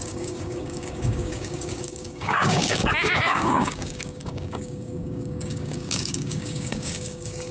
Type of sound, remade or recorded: remade